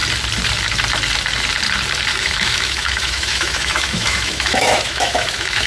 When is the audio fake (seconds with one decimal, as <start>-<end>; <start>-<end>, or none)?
2.1-5.7